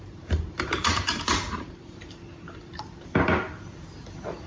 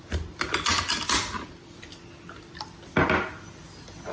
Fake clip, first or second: first